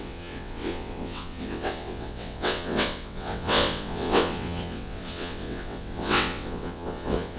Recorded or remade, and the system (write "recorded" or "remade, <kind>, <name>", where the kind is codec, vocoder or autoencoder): remade, vocoder, WaveNeXt